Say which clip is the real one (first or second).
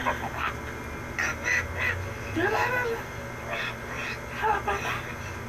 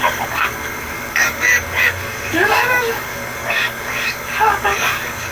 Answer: first